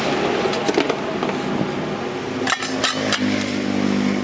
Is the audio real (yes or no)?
yes